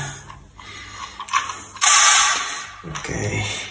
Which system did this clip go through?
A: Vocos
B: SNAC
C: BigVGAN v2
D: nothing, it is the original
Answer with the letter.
D